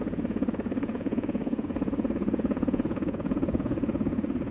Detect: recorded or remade remade